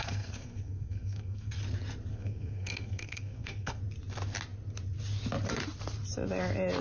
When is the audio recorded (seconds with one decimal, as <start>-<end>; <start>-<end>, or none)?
1.5-2.1; 3.8-6.8